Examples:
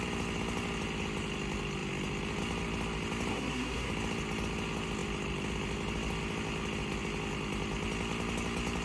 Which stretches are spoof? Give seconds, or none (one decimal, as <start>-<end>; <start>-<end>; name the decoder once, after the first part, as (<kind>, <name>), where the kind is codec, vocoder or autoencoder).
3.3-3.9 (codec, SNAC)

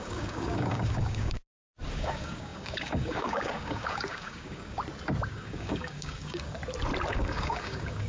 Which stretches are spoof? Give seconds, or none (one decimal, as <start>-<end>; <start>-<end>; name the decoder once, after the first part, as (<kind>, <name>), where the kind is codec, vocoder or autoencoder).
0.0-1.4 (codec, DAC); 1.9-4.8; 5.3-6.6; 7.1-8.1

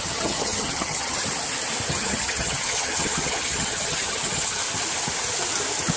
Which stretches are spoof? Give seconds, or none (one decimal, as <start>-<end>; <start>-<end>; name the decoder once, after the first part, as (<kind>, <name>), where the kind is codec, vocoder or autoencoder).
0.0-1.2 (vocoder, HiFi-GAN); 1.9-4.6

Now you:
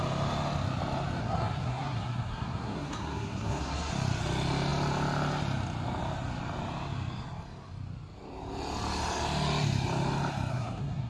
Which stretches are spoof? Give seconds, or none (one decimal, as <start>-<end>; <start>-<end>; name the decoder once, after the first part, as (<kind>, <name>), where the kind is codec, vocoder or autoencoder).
1.2-3.9 (codec, SNAC); 10.5-11.1

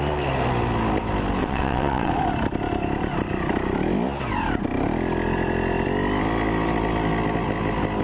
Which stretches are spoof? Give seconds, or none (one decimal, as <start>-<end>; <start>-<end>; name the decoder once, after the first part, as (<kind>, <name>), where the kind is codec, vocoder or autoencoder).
1.4-2.1 (vocoder, WaveNeXt)

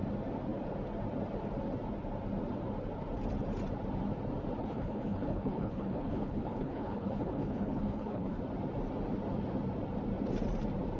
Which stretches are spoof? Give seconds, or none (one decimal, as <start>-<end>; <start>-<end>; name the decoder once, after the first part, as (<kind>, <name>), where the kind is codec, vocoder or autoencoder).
4.6-8.4 (codec, HILCodec)

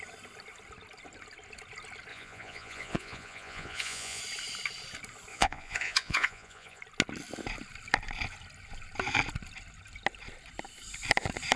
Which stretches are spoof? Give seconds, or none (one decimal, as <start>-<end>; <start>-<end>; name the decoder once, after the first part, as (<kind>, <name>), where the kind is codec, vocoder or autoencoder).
2.1-4.2 (vocoder, Vocos); 5.3-6.8

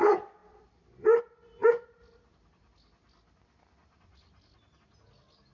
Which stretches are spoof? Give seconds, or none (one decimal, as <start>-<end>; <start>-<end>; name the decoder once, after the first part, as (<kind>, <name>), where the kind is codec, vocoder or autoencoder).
0.4-1.2 (vocoder, BigVGAN v2)